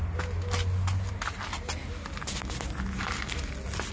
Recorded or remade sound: recorded